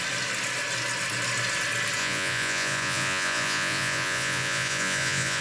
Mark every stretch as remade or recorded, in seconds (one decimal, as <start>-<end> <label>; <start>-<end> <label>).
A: 0.0-2.0 recorded; 2.0-5.4 remade